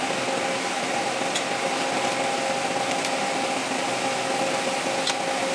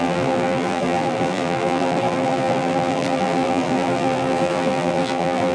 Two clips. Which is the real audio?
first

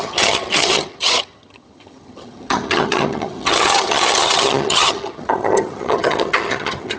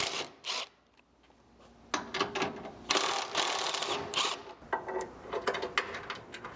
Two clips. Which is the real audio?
second